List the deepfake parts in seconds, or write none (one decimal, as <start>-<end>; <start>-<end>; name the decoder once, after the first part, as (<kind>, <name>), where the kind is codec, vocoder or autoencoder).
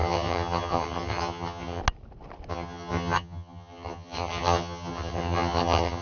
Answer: 0.0-1.8 (vocoder, HiFi-GAN); 2.5-6.0